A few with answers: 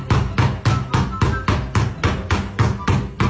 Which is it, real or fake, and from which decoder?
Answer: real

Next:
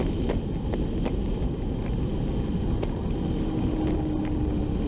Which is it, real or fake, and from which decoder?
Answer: real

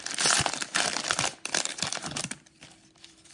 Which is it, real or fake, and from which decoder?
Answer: fake, vocoder, BigVGAN v2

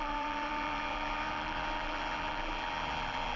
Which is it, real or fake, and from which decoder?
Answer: fake, vocoder, BigVGAN v2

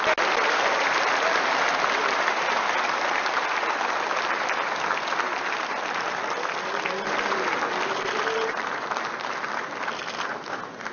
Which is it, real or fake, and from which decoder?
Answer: real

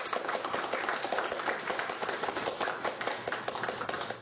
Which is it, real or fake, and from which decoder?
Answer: fake, vocoder, BigVGAN v2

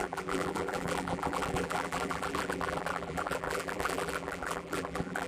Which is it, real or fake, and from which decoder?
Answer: fake, vocoder, BigVGAN v2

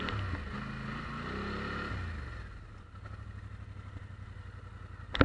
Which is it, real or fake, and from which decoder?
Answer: real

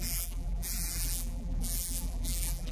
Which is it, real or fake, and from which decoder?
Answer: fake, vocoder, BigVGAN v2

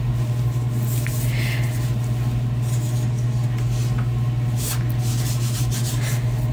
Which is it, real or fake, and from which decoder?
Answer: real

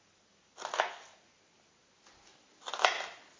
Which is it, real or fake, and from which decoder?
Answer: real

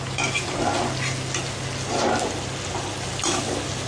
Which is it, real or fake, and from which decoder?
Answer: real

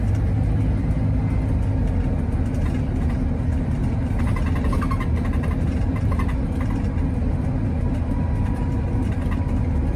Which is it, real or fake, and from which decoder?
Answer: real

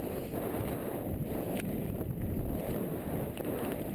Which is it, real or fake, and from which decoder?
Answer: real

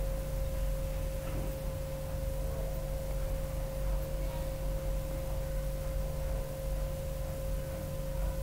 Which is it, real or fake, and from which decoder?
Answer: real